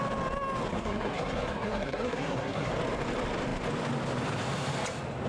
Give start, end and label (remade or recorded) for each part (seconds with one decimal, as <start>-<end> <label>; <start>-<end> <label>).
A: 0.0-0.7 recorded; 0.7-2.7 remade; 2.7-5.3 recorded